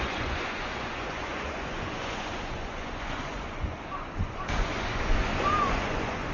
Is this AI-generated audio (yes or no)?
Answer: yes